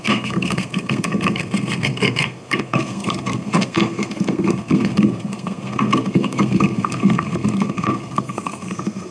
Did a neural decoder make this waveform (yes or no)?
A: yes